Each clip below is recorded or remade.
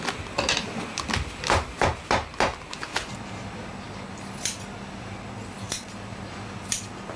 recorded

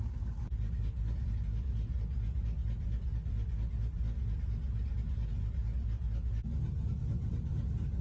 recorded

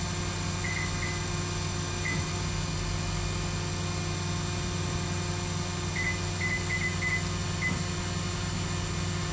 recorded